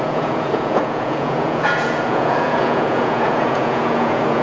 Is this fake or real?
fake